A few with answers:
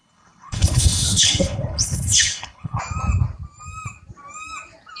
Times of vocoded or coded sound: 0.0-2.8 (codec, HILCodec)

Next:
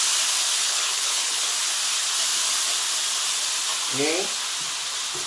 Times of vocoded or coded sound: 0.6-1.5 (codec, HILCodec)

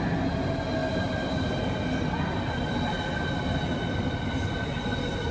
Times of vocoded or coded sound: none

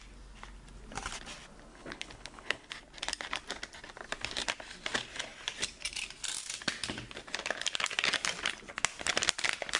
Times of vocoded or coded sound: 1.7-2.7 (codec, HILCodec)